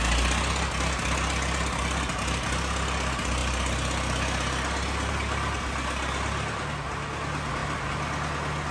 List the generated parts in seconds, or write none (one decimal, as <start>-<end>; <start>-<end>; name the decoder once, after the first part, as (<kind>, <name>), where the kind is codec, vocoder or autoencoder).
none